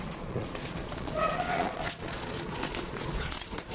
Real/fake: fake